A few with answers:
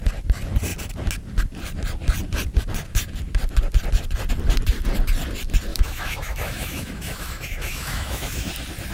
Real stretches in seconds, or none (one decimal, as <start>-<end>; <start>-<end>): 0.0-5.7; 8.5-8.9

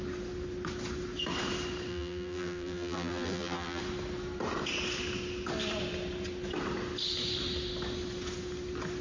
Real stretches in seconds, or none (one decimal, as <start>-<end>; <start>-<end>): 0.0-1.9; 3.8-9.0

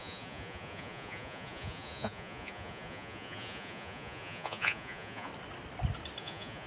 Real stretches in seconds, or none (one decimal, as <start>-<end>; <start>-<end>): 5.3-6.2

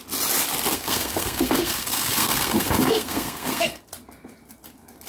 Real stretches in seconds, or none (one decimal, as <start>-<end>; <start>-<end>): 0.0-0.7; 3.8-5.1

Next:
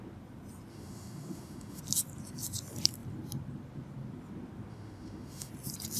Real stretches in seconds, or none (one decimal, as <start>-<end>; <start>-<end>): 0.0-0.7; 1.8-4.7; 5.5-6.0

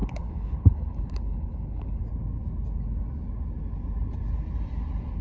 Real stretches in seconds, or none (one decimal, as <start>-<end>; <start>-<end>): 2.0-5.2

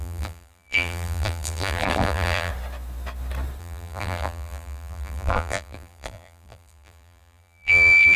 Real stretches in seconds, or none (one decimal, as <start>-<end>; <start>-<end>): 2.5-3.6